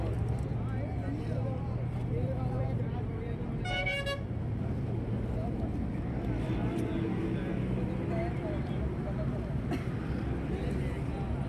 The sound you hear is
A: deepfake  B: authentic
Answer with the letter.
B